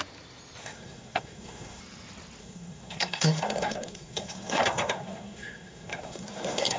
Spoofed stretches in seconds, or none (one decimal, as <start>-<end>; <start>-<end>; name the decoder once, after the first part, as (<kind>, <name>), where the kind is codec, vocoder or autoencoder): 0.6-1.8 (codec, SNAC); 2.4-6.8